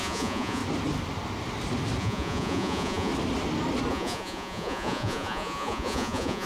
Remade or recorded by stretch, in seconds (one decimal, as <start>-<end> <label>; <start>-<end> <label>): 0.0-0.6 remade; 0.6-2.0 recorded; 2.0-3.1 remade; 3.1-3.9 recorded; 3.9-6.5 remade